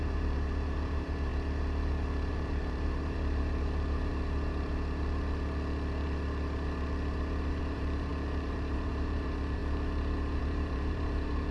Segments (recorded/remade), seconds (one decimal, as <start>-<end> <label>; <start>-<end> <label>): 0.0-1.3 remade; 1.3-2.3 recorded; 2.3-4.1 remade; 4.1-7.6 recorded; 7.6-9.6 remade; 9.6-10.4 recorded; 10.4-11.5 remade